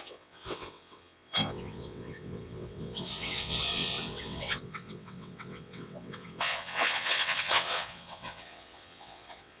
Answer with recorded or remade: remade